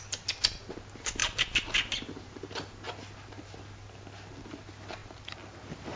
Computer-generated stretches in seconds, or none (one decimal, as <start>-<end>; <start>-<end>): none